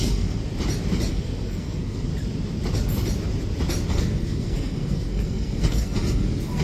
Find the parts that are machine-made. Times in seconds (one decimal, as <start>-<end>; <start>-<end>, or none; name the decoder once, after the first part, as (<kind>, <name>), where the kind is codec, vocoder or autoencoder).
0.0-0.4 (codec, SNAC); 1.1-2.1; 3.9-6.6